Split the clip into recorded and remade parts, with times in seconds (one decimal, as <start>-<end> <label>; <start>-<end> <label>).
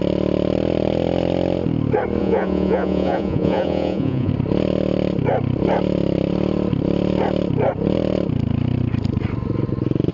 0.0-2.2 recorded; 2.2-4.3 remade; 4.3-10.1 recorded